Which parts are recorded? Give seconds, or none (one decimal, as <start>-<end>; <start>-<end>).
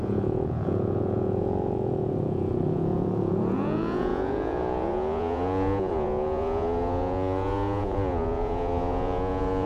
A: none